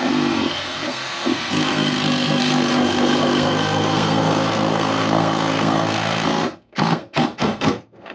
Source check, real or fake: fake